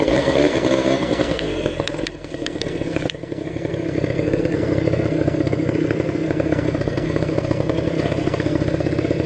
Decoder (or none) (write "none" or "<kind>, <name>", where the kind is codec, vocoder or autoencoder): codec, SNAC